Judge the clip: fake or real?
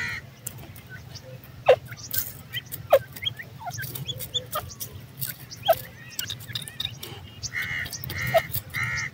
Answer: real